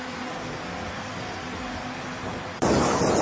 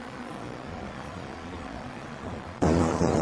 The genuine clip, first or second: first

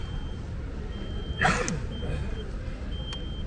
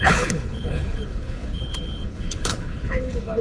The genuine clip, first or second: first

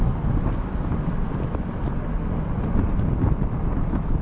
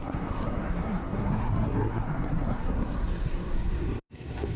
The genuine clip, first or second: first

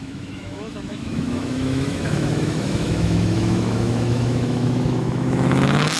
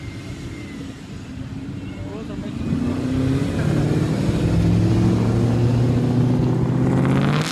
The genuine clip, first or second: second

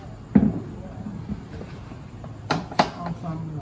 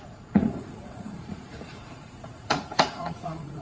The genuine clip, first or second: first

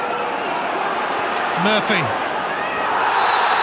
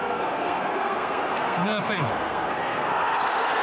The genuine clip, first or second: first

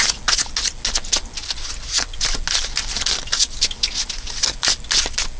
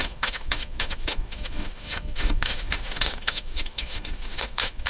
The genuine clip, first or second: first